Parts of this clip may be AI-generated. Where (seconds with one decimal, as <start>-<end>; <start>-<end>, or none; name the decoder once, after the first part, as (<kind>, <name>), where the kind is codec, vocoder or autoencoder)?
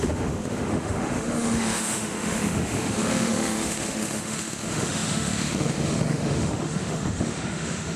0.0-8.0 (autoencoder, DAC-VAE)